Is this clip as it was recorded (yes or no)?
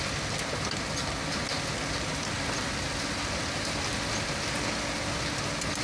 yes